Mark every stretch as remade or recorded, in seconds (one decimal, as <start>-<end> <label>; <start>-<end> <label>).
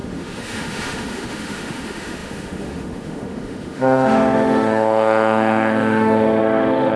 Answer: 0.0-7.0 remade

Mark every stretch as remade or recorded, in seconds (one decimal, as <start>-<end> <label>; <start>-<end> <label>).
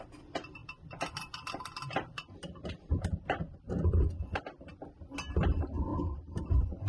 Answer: 0.0-6.9 recorded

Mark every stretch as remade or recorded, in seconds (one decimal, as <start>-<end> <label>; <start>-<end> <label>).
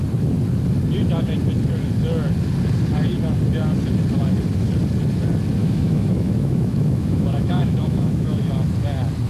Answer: 0.0-5.6 recorded; 5.6-8.4 remade; 8.4-9.3 recorded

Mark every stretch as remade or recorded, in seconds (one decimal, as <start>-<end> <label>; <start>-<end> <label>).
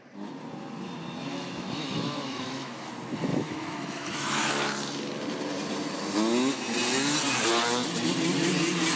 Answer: 0.0-1.3 recorded; 1.3-2.9 remade; 2.9-3.3 recorded; 3.3-4.5 remade; 4.5-9.0 recorded